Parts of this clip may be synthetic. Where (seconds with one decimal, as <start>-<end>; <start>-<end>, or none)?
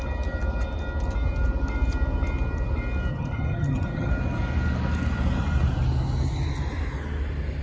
3.1-4.1